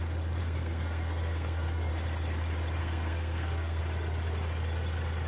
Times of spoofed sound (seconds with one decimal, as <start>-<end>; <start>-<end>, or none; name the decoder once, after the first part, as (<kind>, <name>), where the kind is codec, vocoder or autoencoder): 0.4-1.9 (codec, SNAC); 2.8-3.8